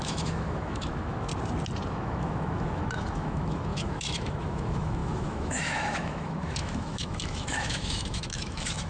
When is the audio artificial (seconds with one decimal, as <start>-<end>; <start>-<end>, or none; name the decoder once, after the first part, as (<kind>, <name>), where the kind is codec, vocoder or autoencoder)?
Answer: 0.0-1.3 (autoencoder, DAC-VAE); 1.9-8.9